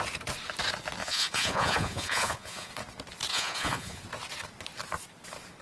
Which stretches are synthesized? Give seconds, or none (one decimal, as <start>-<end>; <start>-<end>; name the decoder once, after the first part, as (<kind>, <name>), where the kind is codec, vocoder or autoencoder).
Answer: 1.0-2.7 (vocoder, Vocos); 3.3-4.0